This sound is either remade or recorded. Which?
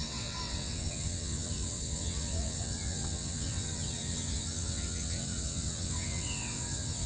remade